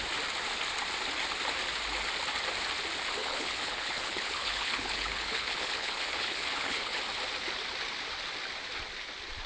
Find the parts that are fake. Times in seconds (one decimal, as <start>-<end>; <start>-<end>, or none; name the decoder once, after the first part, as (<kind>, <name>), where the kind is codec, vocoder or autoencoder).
3.2-7.0 (codec, HILCodec)